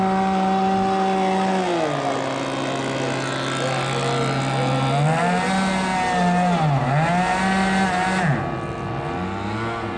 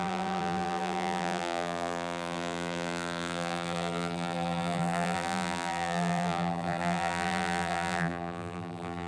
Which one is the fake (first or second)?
second